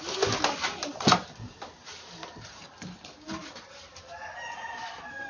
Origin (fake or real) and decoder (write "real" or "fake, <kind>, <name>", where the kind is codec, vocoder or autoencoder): real